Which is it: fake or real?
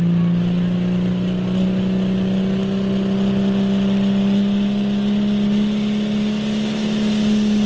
real